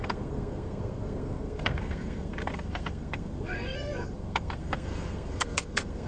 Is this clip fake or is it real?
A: fake